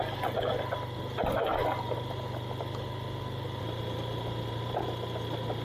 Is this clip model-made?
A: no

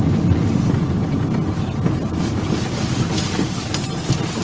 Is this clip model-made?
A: no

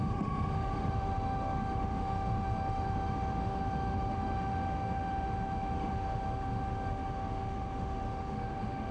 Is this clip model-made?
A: yes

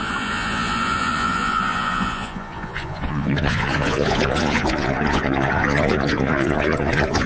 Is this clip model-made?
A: yes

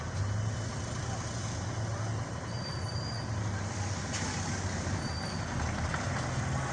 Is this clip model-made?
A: no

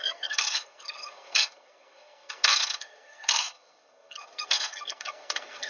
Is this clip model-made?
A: yes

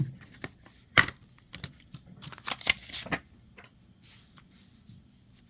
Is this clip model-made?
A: no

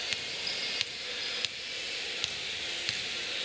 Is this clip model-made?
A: no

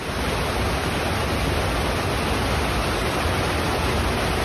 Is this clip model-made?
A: no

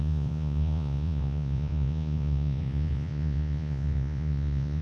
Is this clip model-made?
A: yes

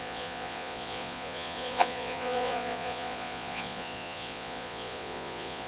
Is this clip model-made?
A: yes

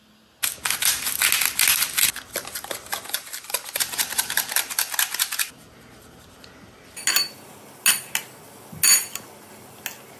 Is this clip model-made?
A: no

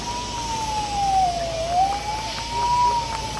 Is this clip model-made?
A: no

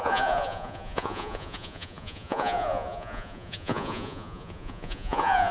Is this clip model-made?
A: yes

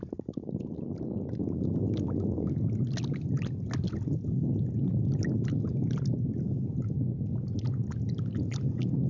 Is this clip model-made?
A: no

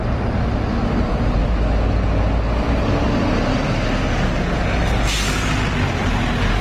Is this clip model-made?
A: no